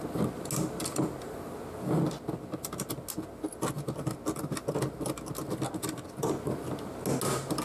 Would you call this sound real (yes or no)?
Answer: yes